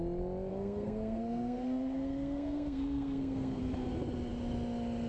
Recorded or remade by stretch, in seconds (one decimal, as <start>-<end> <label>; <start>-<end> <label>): 0.0-0.5 recorded; 0.5-3.6 remade; 3.6-5.1 recorded